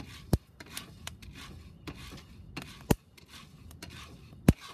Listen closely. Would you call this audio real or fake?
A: real